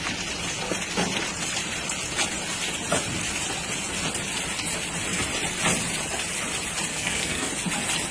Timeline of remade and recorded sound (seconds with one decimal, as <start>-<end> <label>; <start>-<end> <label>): 0.0-6.9 recorded; 6.9-7.5 remade; 7.5-8.1 recorded